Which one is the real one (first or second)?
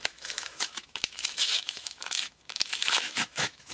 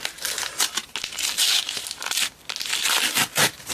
second